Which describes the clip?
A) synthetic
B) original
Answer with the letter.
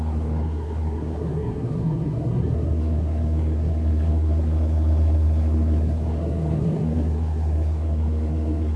A